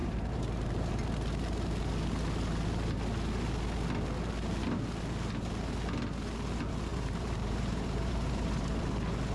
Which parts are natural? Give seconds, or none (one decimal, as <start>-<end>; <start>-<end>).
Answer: 0.9-6.9; 8.8-9.3